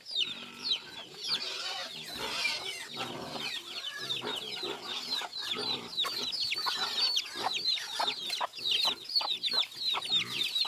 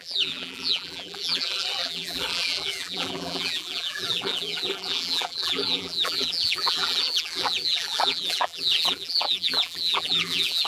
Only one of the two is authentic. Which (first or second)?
first